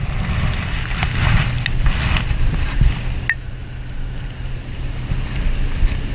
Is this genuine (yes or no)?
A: yes